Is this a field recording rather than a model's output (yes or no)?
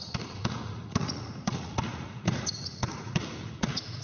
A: no